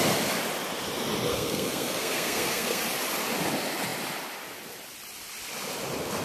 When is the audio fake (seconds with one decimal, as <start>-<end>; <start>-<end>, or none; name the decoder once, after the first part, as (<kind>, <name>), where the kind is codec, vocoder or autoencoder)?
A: 1.3-2.8 (codec, SNAC)